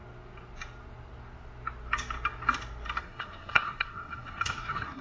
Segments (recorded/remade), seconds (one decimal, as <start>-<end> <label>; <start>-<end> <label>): 0.0-3.0 recorded; 3.0-5.0 remade